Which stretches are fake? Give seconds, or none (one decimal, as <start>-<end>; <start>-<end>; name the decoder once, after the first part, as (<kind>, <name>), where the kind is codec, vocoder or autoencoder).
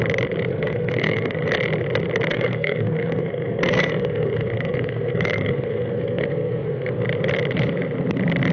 0.5-1.5 (codec, SNAC); 2.3-6.9